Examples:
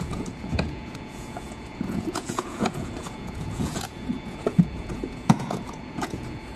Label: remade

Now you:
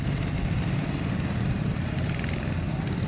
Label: recorded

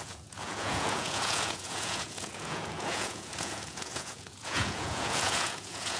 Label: remade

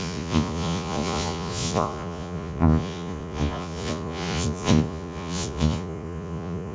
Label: remade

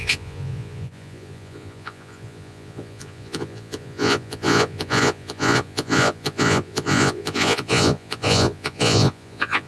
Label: remade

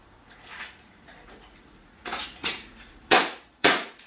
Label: remade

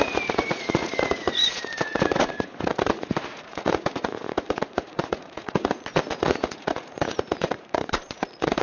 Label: remade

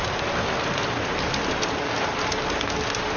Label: recorded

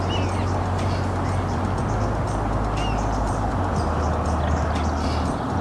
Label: recorded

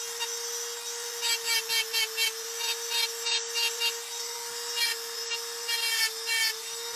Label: recorded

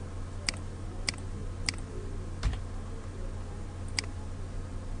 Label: recorded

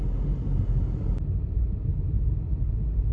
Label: recorded